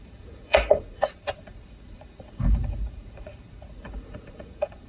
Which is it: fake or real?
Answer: fake